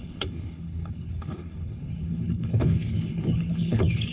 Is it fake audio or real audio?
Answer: fake